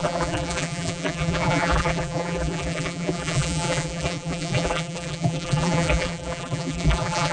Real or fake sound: fake